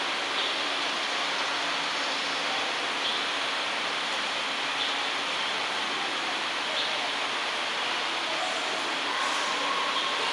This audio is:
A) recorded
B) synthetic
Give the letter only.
A